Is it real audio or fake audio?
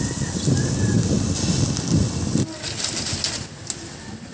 real